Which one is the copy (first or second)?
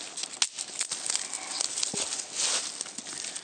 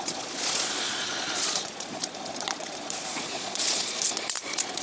second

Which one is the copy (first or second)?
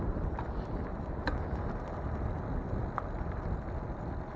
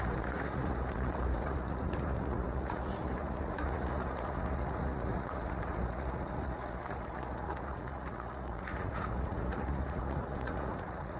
second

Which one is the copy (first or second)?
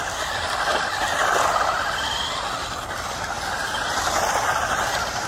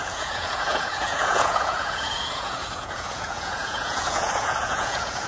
second